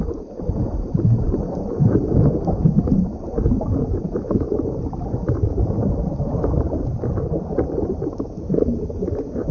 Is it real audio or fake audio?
fake